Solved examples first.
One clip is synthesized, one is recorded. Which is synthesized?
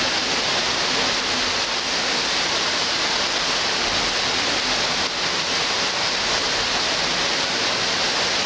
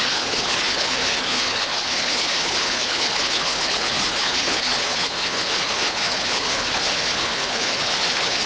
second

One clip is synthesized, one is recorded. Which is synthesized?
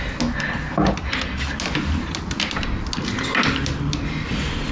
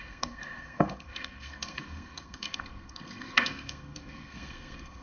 second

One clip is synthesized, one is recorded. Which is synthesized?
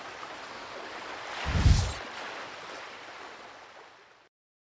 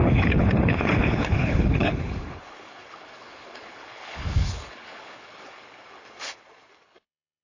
second